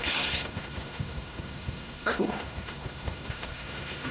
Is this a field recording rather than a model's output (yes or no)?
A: no